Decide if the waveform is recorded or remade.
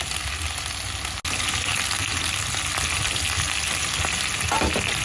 recorded